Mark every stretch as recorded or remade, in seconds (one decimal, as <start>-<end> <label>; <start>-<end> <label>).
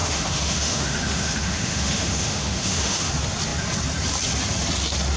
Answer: 0.0-3.1 remade; 3.1-5.2 recorded